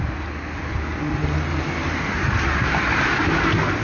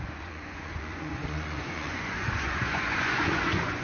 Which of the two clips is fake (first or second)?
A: second